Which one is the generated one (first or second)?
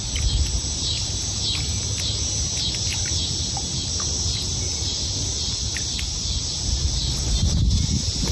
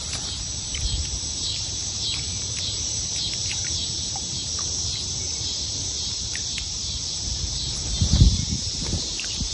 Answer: second